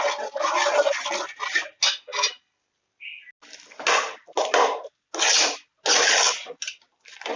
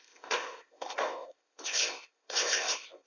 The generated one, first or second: second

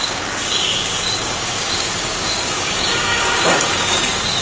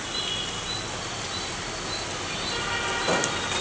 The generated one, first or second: first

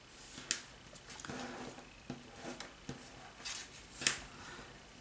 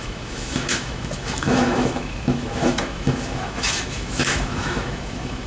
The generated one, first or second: second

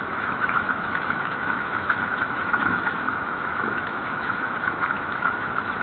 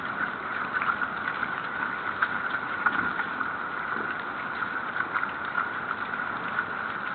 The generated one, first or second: first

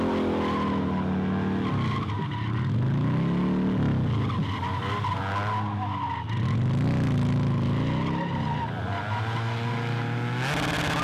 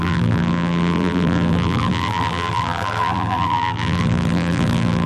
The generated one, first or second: second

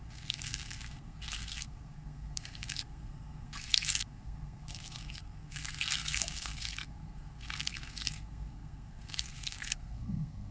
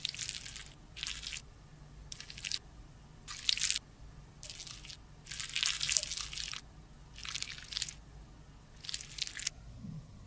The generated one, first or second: first